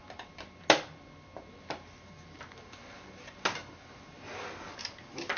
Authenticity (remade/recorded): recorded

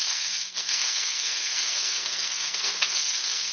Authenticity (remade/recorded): remade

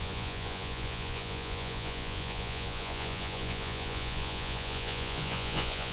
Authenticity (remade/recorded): remade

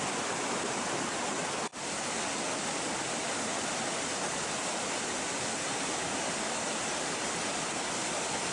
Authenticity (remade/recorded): recorded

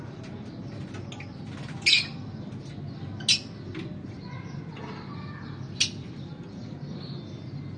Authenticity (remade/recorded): recorded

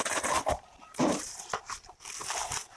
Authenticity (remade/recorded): remade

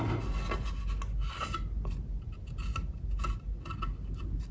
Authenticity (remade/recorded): recorded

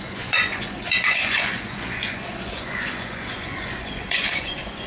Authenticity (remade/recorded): remade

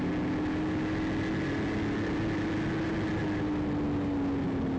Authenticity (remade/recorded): recorded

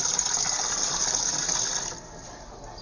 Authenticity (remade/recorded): recorded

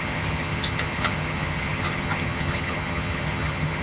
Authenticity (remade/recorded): remade